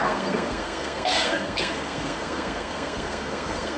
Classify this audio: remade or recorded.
remade